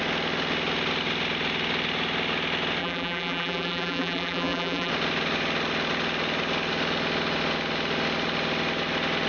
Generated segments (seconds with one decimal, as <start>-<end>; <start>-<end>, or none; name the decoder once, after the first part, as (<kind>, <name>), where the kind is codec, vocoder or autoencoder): 2.8-4.9 (vocoder, BigVGAN v2)

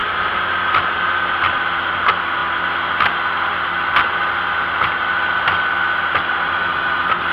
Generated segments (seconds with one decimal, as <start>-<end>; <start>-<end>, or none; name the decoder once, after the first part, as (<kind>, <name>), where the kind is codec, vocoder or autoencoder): none

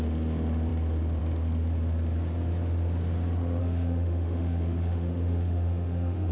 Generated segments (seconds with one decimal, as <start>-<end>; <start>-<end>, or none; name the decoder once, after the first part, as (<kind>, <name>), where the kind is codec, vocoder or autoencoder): 3.6-6.3 (autoencoder, DAC-VAE)